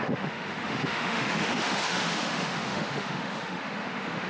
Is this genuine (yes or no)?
no